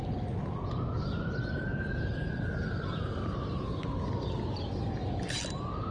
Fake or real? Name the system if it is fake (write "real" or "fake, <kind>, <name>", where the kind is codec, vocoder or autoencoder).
real